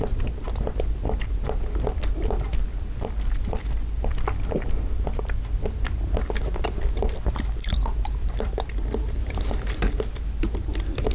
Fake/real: fake